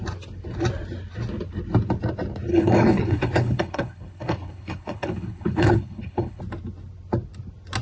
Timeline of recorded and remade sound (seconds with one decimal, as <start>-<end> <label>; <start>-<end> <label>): 0.0-2.5 recorded; 2.5-6.4 remade; 6.4-7.8 recorded

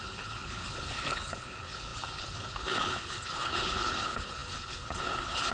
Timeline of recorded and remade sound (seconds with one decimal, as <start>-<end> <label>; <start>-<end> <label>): 0.0-5.5 remade

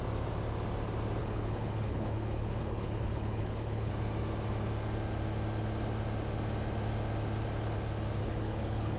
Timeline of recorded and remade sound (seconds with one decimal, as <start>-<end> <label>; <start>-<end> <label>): 0.0-1.2 recorded; 1.2-3.9 remade; 3.9-8.2 recorded; 8.2-9.0 remade